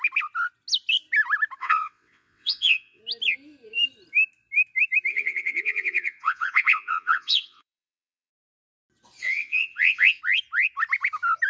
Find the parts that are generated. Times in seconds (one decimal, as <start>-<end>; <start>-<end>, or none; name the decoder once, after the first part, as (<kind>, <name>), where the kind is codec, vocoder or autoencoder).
1.6-3.0 (vocoder, WaveNeXt); 5.1-8.3; 9.2-10.2